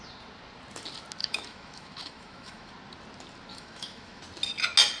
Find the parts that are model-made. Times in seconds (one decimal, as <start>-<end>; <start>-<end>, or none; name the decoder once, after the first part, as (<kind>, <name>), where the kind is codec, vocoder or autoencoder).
1.2-2.7 (autoencoder, DAC-VAE); 3.5-4.2